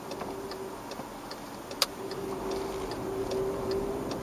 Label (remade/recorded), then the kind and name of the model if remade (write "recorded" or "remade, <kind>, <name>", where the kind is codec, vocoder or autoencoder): recorded